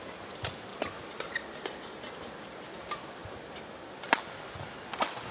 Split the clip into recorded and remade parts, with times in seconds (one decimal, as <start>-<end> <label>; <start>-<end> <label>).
0.0-5.3 recorded

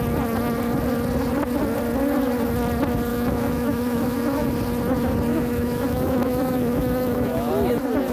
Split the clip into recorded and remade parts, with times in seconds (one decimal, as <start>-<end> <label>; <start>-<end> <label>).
0.0-3.1 recorded; 3.1-4.5 remade; 4.5-5.3 recorded; 5.3-7.5 remade; 7.5-8.1 recorded

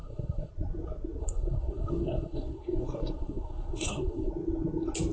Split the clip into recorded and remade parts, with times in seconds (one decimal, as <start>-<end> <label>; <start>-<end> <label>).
0.0-0.5 remade; 0.5-1.2 recorded; 1.2-4.3 remade; 4.3-5.1 recorded

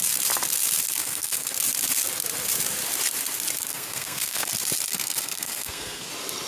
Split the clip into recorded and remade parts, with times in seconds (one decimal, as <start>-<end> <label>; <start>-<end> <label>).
0.0-1.0 recorded; 1.0-1.5 remade; 1.5-3.7 recorded; 3.7-4.5 remade; 4.5-4.9 recorded; 4.9-6.1 remade; 6.1-6.5 recorded

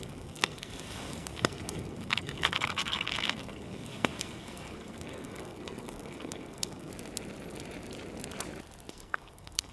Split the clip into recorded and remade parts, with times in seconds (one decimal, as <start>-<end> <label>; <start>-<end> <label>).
0.0-6.9 remade; 6.9-8.9 recorded; 8.9-9.7 remade

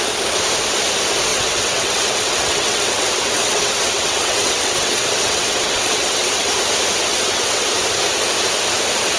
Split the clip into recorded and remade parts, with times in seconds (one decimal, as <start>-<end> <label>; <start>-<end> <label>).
0.0-1.3 recorded; 1.3-6.5 remade; 6.5-7.1 recorded; 7.1-7.7 remade; 7.7-9.2 recorded

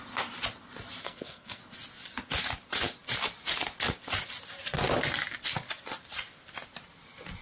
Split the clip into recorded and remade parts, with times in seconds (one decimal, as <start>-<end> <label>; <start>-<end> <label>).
0.0-1.0 recorded; 1.0-1.6 remade; 1.6-7.4 recorded

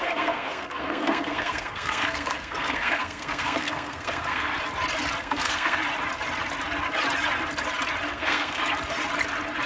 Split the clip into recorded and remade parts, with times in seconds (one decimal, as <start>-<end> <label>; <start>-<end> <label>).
0.0-4.5 remade; 4.5-5.2 recorded; 5.2-5.8 remade; 5.8-8.1 recorded; 8.1-8.6 remade; 8.6-9.7 recorded